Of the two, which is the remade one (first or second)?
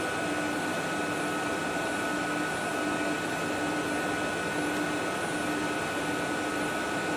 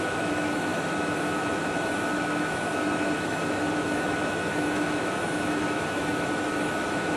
second